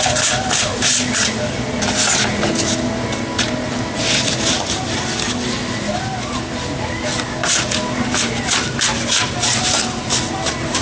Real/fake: real